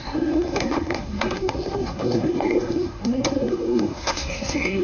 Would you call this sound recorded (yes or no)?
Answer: no